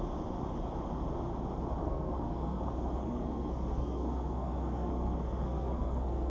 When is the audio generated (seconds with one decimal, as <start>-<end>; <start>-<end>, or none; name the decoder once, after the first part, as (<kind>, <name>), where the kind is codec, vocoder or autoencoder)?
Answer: 1.8-2.6 (codec, SNAC); 3.0-6.3